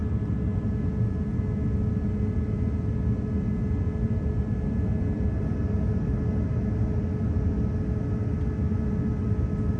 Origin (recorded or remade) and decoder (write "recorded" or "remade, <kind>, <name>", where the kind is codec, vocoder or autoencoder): recorded